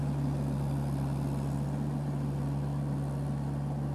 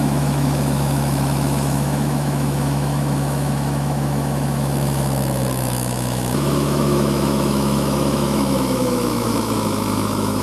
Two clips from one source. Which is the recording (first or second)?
first